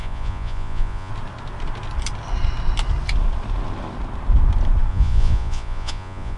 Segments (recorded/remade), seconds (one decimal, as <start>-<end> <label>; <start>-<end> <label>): 0.0-1.1 remade; 1.1-4.9 recorded; 4.9-6.4 remade